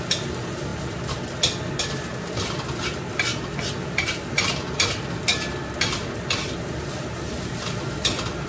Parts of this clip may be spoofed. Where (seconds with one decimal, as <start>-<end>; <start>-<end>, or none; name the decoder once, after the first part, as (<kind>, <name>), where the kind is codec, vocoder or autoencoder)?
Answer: none